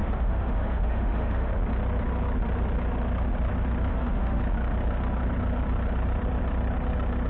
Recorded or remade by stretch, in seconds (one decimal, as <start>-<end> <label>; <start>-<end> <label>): 0.0-1.5 remade; 1.5-3.9 recorded; 3.9-4.4 remade; 4.4-7.3 recorded